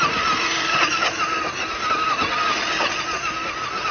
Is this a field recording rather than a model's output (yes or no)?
yes